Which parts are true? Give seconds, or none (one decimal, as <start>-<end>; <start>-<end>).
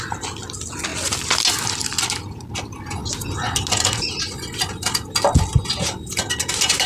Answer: 0.0-6.9